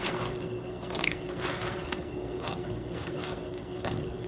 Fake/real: fake